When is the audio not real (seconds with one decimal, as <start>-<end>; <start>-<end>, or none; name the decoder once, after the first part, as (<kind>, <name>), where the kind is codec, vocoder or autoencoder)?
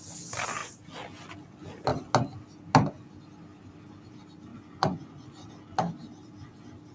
4.5-5.5 (vocoder, Vocos)